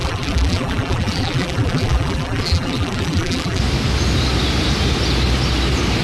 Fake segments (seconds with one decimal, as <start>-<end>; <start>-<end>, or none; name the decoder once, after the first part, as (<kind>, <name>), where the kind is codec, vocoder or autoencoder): 0.0-3.6 (vocoder, BigVGAN v2)